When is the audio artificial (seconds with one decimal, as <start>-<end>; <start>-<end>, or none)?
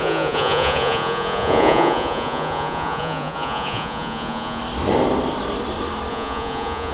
0.0-4.6; 6.1-6.9